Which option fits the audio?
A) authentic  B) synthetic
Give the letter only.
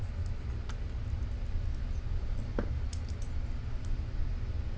A